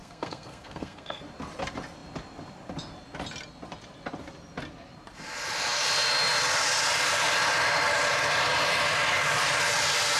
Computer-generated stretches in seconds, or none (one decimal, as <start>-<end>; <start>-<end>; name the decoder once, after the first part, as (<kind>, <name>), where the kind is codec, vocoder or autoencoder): 0.0-1.2 (codec, SNAC)